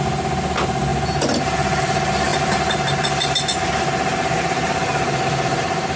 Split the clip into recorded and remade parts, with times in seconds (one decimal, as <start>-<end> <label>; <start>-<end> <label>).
0.0-6.0 recorded